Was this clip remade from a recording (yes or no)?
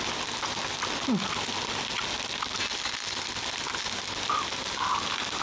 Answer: no